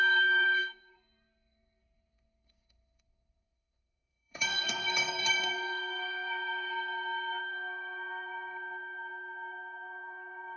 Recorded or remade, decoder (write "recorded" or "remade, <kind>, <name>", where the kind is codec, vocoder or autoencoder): remade, codec, SNAC